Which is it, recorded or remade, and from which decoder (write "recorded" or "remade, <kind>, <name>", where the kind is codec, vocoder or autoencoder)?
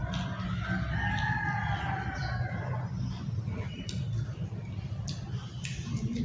recorded